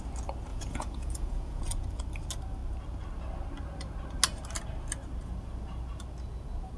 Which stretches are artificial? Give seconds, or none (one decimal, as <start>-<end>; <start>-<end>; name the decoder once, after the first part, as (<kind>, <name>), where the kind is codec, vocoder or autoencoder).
0.5-1.6 (vocoder, Vocos)